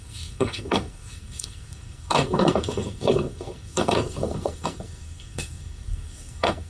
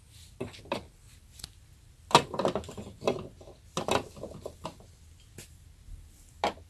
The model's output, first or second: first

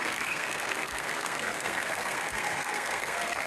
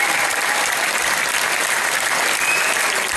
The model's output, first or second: first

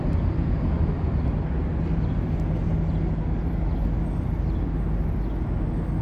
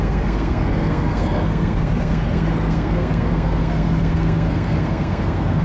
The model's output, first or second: second